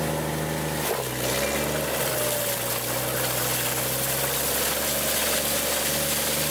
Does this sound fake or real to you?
real